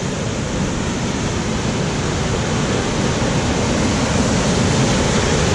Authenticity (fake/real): real